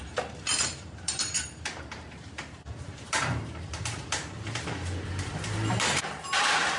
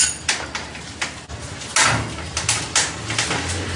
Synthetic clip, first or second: first